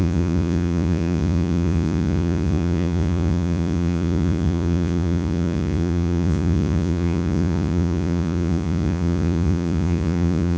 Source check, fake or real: fake